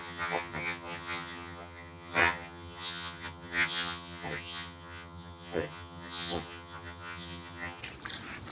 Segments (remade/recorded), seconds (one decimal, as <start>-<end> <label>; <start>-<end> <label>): 0.0-7.8 remade; 7.8-8.5 recorded